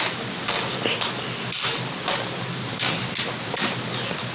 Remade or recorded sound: recorded